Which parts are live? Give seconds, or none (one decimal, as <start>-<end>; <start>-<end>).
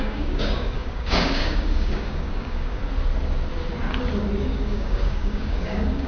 2.8-4.4